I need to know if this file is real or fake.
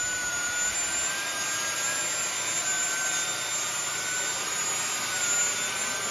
real